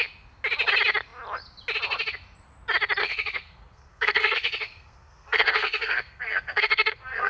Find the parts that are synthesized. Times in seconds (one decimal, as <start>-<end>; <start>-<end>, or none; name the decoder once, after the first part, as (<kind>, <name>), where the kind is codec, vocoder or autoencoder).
3.0-7.3 (codec, SNAC)